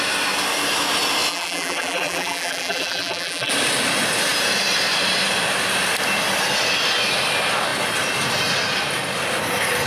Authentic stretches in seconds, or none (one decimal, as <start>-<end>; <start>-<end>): 0.0-1.3; 3.5-9.9